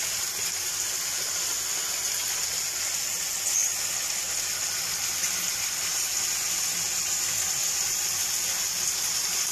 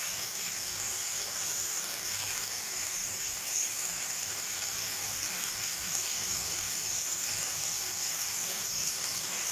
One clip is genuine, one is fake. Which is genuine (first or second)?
first